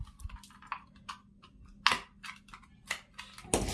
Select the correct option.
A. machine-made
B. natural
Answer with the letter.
B